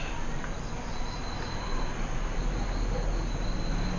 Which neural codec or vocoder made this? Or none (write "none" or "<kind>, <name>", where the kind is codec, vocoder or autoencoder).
none